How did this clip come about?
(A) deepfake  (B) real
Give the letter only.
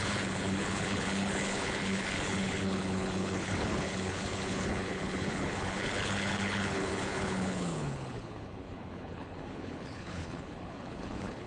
A